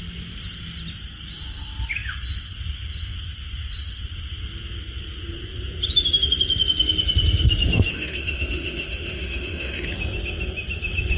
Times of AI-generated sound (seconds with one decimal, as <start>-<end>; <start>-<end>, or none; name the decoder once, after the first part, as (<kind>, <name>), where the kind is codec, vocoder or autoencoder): 7.9-9.9 (autoencoder, DAC-VAE)